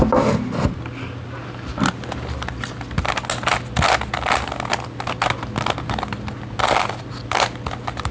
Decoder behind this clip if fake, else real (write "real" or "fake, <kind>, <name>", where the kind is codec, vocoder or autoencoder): real